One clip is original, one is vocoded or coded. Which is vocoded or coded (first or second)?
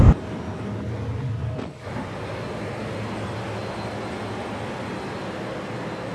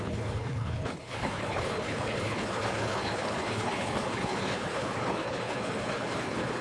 second